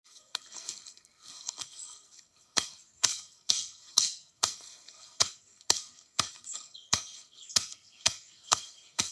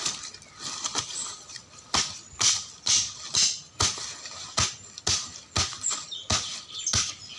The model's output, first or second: first